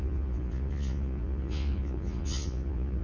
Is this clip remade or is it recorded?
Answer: remade